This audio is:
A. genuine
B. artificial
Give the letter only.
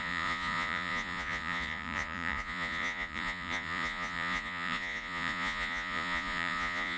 B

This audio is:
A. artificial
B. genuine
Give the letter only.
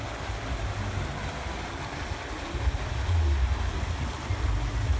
B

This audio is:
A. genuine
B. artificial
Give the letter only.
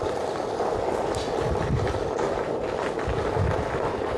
A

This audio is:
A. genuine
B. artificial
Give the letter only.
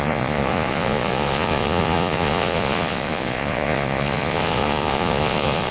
B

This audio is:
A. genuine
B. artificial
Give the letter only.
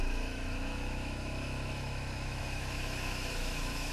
B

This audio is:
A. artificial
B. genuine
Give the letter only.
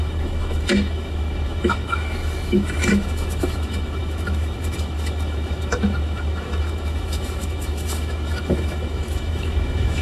A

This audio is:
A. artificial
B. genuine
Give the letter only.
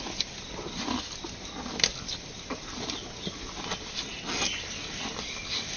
B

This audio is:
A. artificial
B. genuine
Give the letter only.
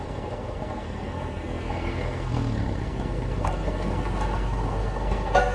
A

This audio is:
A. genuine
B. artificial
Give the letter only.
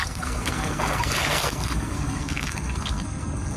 B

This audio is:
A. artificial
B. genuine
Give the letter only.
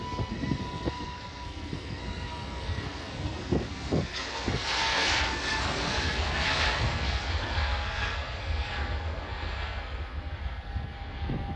A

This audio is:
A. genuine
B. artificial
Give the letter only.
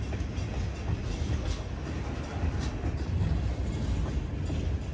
A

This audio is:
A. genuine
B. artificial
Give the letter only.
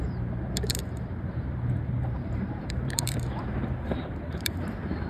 B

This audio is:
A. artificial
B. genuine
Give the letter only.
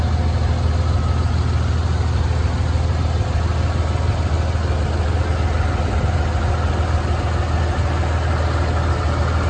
B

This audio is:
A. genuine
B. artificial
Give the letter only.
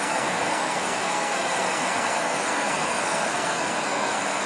B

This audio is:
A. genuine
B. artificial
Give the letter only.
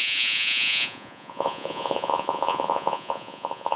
B